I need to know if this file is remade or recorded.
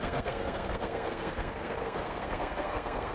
remade